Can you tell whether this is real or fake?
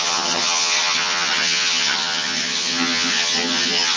fake